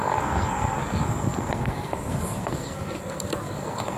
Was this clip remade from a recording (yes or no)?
yes